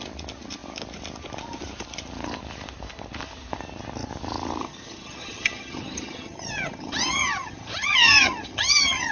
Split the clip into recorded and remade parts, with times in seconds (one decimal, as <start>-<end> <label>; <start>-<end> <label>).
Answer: 0.0-4.6 recorded; 4.6-9.1 remade

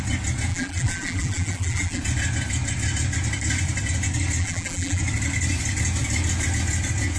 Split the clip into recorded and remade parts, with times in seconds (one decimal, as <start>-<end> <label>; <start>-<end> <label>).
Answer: 0.0-0.5 recorded; 0.5-2.0 remade; 2.0-4.4 recorded; 4.4-5.0 remade; 5.0-7.2 recorded

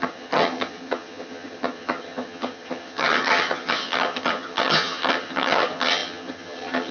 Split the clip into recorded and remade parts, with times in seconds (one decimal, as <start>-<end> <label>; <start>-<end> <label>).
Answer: 0.0-6.9 remade

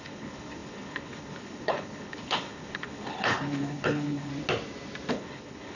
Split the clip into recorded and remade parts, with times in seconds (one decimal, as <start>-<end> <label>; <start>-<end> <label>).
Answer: 0.0-4.3 remade; 4.3-5.1 recorded; 5.1-5.8 remade

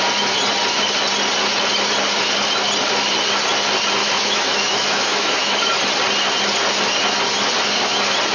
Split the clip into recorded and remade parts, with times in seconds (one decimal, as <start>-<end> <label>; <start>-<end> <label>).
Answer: 0.0-4.0 recorded; 4.0-5.8 remade; 5.8-8.3 recorded